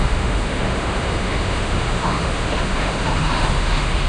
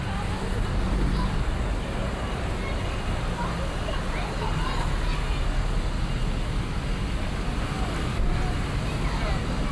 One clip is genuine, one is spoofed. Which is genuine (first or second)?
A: second